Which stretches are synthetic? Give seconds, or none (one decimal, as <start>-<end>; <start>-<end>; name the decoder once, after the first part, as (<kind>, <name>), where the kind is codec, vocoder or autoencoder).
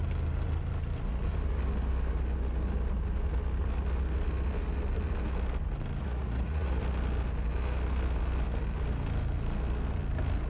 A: 6.0-6.8 (vocoder, Vocos)